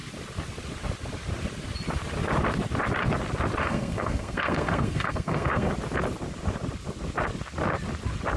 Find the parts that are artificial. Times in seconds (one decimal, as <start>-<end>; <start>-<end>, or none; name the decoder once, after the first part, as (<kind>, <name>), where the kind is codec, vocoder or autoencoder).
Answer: 3.6-5.7 (codec, SNAC)